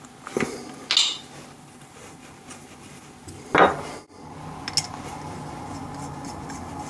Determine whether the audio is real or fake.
real